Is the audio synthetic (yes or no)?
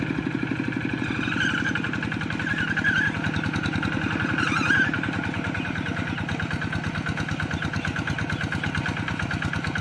no